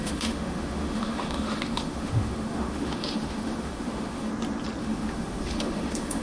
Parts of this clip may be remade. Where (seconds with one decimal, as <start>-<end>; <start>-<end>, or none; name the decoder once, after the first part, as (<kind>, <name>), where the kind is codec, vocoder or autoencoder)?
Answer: 0.0-4.3 (autoencoder, DAC-VAE); 4.8-6.2